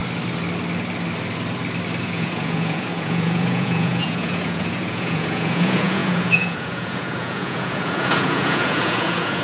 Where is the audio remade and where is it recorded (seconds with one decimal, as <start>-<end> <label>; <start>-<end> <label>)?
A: 0.0-2.0 recorded; 2.0-9.4 remade